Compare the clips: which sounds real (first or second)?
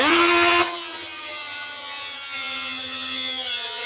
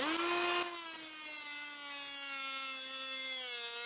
second